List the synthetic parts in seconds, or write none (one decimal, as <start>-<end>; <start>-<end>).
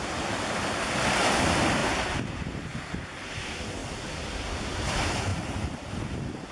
none